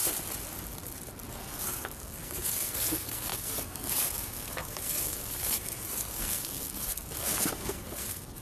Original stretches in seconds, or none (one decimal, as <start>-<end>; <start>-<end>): 0.0-1.3